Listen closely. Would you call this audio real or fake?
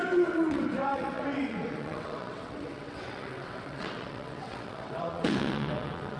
fake